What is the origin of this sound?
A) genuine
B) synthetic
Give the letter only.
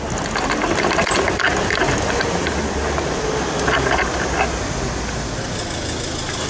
A